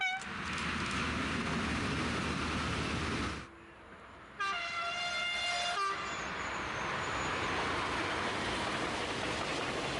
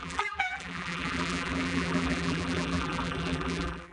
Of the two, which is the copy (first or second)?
second